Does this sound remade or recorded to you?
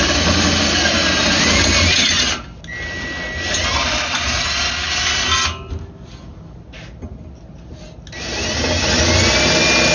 recorded